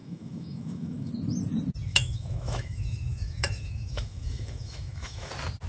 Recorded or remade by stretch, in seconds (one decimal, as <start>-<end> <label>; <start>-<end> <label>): 0.0-1.1 remade; 1.1-1.9 recorded; 1.9-5.3 remade; 5.3-5.7 recorded